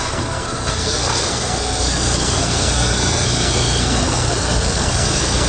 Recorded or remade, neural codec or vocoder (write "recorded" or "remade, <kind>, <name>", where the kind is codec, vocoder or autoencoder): remade, codec, SNAC